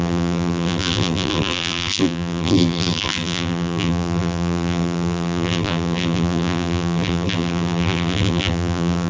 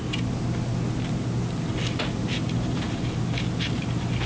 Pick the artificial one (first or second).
first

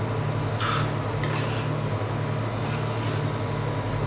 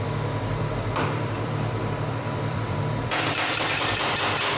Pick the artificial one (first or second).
second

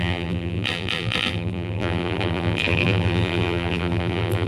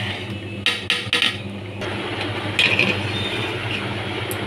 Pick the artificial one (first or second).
first